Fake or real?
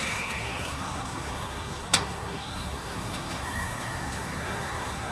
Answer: fake